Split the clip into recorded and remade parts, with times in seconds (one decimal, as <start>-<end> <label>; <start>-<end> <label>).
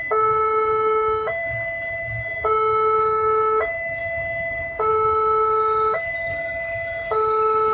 0.0-7.7 recorded